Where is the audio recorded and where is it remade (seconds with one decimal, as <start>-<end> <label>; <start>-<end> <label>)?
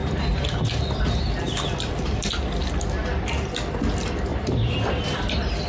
0.0-4.3 recorded; 4.3-5.3 remade; 5.3-5.7 recorded